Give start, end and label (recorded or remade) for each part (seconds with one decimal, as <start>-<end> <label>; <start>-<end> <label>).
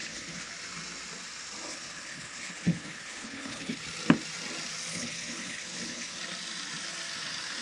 0.0-0.5 remade; 0.5-1.7 recorded; 1.7-3.8 remade; 3.8-4.9 recorded; 4.9-6.2 remade; 6.2-7.6 recorded